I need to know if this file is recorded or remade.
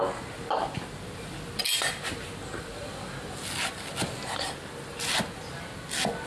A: recorded